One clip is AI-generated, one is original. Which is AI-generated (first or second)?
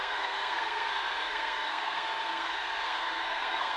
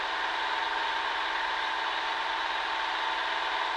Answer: first